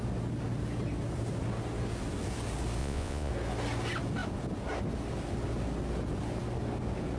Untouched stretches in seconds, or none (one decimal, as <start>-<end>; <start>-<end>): 0.0-2.8; 3.3-7.2